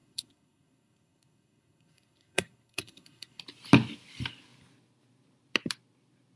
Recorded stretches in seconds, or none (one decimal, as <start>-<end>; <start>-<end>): 3.4-6.4